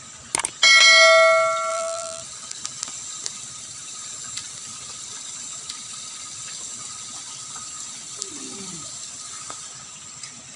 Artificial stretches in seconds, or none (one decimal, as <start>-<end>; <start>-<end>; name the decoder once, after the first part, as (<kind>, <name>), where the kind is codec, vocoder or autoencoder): 1.7-2.2 (vocoder, BigVGAN v2)